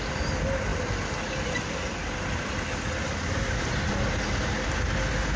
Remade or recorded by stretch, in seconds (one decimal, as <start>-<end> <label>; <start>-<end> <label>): 0.0-5.4 recorded